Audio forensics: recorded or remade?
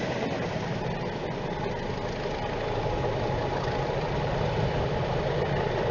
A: recorded